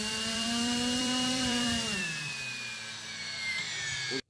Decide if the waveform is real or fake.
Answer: fake